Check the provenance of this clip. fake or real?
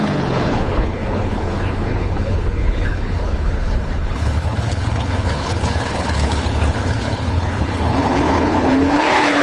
fake